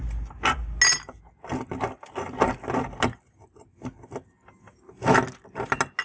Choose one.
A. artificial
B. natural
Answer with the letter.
B